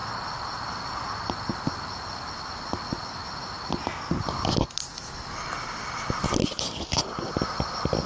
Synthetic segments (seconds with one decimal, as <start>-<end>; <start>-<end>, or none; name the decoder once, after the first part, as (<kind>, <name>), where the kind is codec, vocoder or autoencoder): none